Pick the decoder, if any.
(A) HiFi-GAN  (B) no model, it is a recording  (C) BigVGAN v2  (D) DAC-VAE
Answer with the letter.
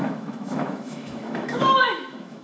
D